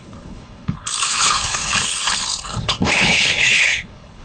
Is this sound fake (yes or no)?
yes